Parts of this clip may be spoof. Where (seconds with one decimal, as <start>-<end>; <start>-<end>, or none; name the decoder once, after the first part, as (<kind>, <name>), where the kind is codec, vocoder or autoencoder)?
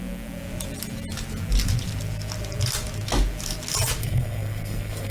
4.0-5.1 (codec, SNAC)